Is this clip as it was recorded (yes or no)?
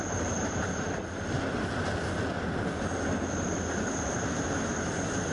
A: yes